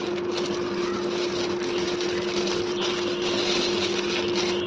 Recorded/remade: recorded